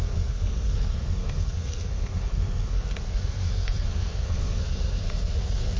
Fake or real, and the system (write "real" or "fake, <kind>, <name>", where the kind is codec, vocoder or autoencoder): fake, codec, SNAC